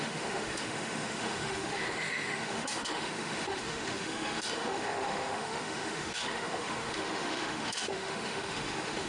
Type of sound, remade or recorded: remade